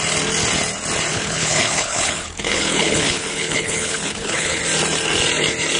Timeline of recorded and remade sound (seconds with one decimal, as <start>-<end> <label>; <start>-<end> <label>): 0.0-1.1 recorded; 1.1-4.6 remade; 4.6-5.8 recorded